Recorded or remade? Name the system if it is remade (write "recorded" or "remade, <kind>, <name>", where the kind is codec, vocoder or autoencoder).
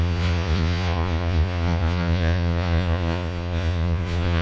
remade, vocoder, Vocos